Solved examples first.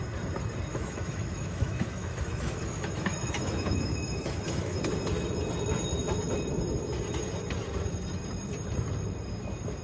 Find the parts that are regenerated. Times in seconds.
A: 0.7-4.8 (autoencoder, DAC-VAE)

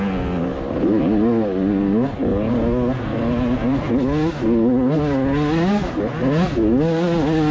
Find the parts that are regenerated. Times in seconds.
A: none

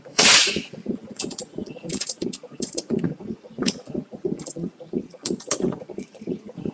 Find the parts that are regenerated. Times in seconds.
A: 0.0-6.7 (vocoder, Vocos)

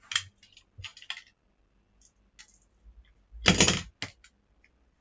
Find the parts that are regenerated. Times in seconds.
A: none

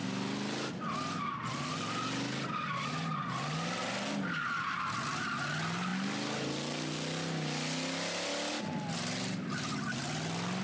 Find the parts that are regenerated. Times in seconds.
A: none

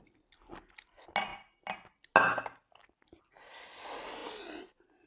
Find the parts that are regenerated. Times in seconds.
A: none

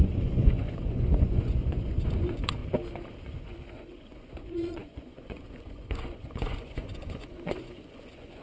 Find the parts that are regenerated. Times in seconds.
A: 0.0-2.6 (vocoder, Vocos); 3.2-8.4

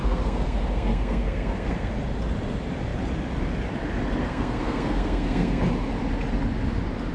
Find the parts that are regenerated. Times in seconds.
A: 0.0-1.9 (codec, SNAC); 4.2-5.6